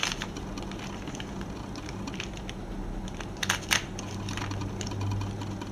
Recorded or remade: recorded